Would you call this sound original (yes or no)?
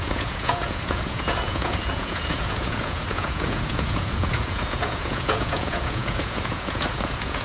no